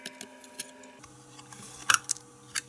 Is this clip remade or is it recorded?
recorded